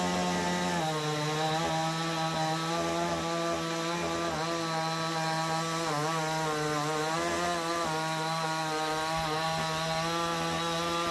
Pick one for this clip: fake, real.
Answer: real